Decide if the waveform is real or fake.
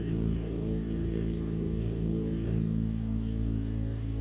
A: fake